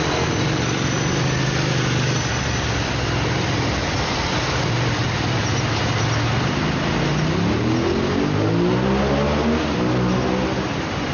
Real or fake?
real